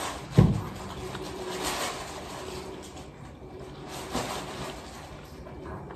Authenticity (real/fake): real